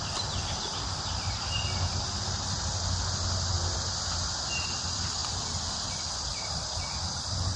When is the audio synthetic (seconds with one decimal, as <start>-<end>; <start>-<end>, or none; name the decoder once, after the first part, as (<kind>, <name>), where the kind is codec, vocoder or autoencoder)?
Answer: none